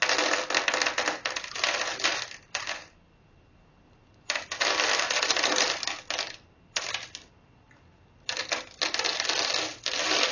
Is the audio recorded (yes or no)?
yes